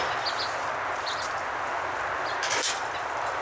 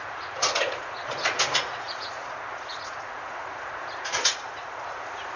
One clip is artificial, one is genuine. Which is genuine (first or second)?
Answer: first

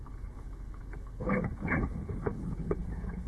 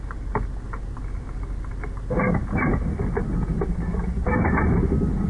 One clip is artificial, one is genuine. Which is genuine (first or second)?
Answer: second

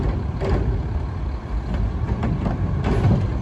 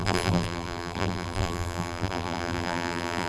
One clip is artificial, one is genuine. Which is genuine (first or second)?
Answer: first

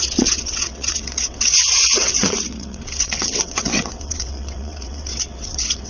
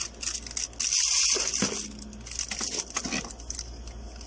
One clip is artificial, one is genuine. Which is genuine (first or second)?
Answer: second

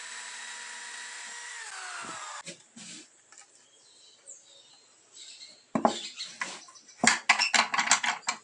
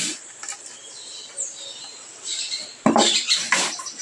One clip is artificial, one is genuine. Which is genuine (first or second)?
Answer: first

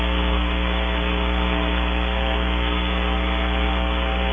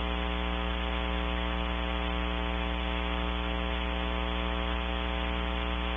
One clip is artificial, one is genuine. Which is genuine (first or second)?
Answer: second